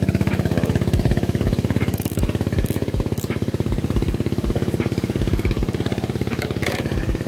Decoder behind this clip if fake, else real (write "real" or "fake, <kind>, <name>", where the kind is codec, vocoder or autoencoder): fake, codec, DAC